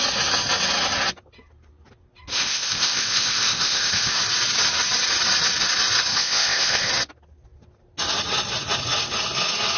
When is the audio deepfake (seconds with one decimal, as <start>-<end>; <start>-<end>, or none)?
2.3-4.2; 6.1-6.9